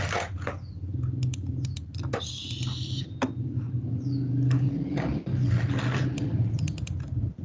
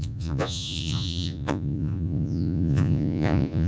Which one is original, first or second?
first